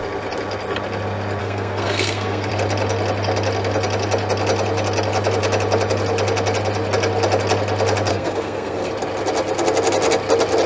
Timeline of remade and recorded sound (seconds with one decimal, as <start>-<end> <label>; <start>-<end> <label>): 0.0-1.4 recorded; 1.4-2.5 remade; 2.5-8.1 recorded; 8.1-8.9 remade; 8.9-10.7 recorded